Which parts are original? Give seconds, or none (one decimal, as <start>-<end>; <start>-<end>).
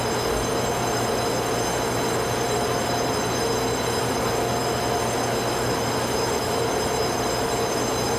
0.0-8.2